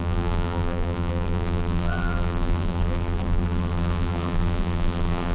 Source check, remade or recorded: remade